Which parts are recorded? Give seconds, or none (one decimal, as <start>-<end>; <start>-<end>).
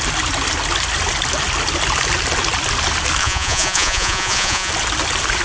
0.0-3.2; 4.7-5.4